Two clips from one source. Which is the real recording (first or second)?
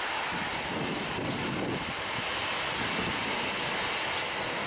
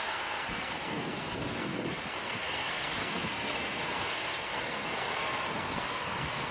first